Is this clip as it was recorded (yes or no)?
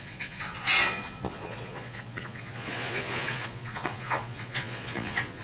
no